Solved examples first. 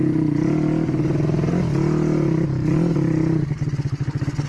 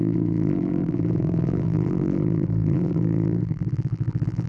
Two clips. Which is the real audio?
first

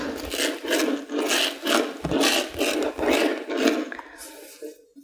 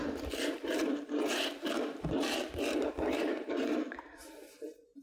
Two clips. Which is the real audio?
first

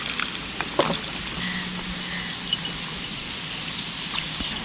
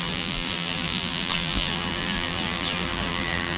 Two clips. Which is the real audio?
first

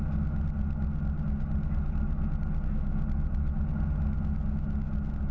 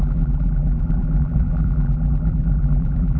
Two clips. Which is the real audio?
first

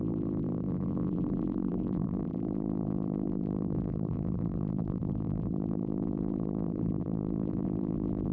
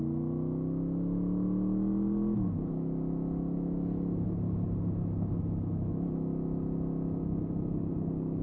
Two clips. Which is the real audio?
second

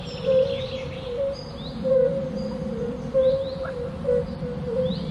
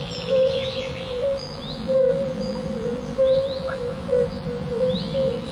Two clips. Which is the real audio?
first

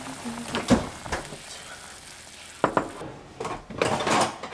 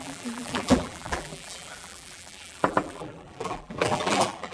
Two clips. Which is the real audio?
first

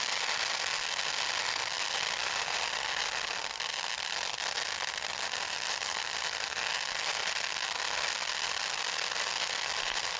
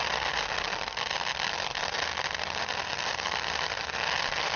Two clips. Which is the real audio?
first